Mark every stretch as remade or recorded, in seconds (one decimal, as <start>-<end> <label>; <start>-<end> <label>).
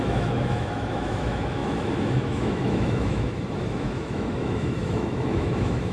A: 0.0-5.9 remade